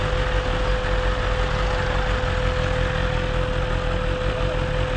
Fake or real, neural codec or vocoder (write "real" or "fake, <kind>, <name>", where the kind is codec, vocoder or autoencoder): real